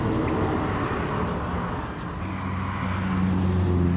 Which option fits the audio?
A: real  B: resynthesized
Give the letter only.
A